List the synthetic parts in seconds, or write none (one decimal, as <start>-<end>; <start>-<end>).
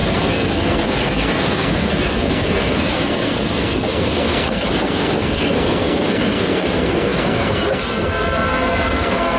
0.0-9.4